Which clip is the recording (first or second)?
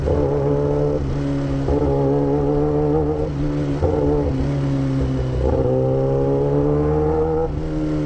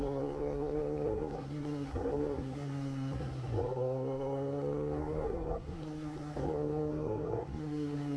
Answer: first